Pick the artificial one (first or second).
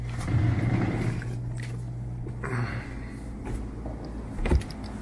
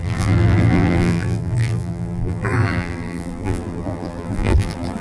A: second